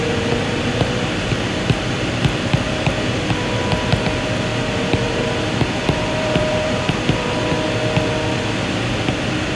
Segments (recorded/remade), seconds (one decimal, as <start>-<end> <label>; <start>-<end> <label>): 0.0-4.5 recorded; 4.5-6.9 remade; 6.9-9.5 recorded